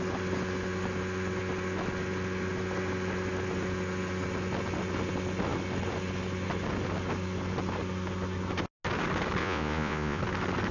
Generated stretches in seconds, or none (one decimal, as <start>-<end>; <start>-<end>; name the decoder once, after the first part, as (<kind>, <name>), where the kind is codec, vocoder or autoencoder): 9.4-10.2 (vocoder, Vocos)